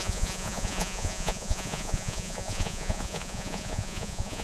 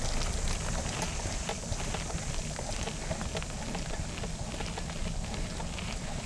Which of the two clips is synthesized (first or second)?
first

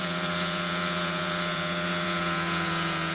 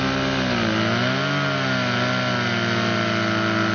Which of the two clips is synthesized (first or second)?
first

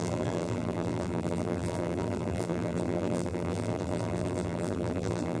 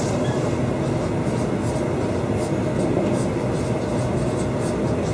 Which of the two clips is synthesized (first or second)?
first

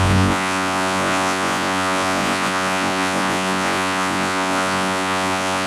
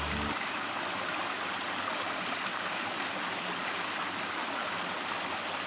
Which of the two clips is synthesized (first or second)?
first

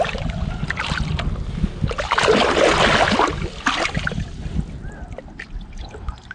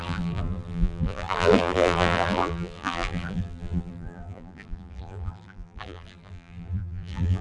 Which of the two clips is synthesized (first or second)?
second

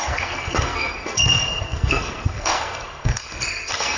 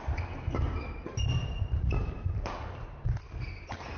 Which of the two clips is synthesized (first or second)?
first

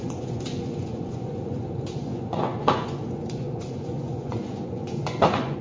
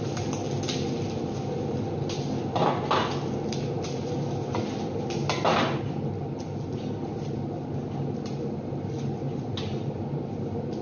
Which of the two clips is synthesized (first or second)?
first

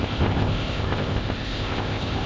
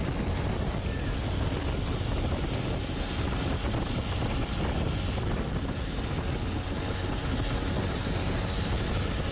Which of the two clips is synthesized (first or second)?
first